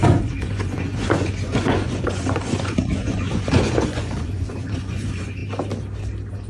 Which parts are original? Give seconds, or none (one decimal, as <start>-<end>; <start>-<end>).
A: 5.4-6.5